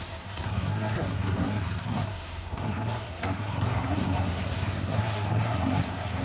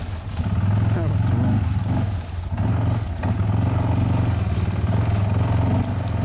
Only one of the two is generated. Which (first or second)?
first